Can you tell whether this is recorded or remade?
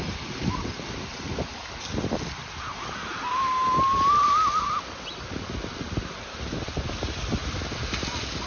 recorded